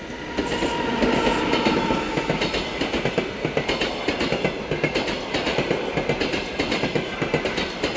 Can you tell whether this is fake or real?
real